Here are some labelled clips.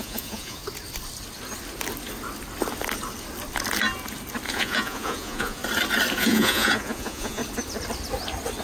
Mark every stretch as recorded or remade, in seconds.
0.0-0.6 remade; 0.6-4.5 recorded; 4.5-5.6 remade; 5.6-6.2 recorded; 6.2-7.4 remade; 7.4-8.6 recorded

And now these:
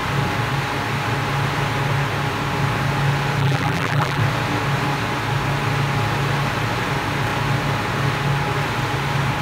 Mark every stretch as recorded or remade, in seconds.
0.0-3.4 recorded; 3.4-4.2 remade; 4.2-9.4 recorded

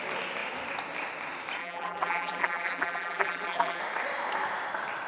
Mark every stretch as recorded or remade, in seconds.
0.0-1.6 recorded; 1.6-3.8 remade; 3.8-5.1 recorded

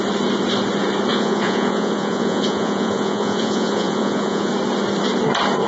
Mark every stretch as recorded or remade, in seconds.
0.0-1.1 recorded; 1.1-4.5 remade; 4.5-5.7 recorded

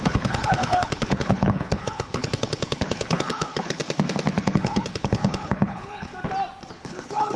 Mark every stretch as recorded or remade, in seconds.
0.0-3.8 remade; 3.8-4.4 recorded; 4.4-6.1 remade; 6.1-6.7 recorded; 6.7-7.4 remade

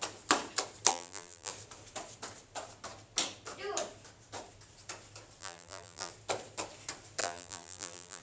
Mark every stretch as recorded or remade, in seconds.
0.0-0.9 recorded; 0.9-1.5 remade; 1.5-5.4 recorded; 5.4-6.1 remade; 6.1-7.2 recorded; 7.2-8.2 remade